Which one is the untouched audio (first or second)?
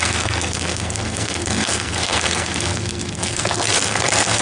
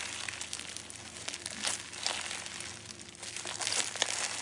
second